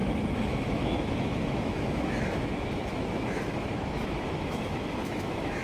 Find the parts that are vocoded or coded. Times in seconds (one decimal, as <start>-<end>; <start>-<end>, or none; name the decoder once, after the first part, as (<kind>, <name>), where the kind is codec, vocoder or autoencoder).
0.0-5.6 (autoencoder, DAC-VAE)